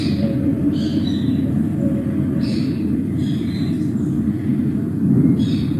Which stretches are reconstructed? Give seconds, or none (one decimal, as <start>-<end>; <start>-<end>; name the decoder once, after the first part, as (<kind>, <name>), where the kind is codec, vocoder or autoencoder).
0.0-0.9 (vocoder, BigVGAN v2); 2.4-3.6; 4.1-5.8